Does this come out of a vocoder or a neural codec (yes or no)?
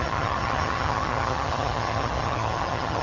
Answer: yes